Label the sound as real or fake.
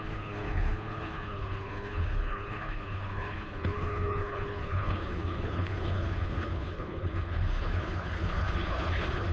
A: fake